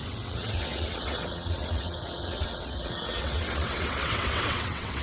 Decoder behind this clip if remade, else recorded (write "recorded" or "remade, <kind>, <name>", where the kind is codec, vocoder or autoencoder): remade, vocoder, WaveNeXt